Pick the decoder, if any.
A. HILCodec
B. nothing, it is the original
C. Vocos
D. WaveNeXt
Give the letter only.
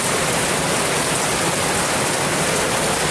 B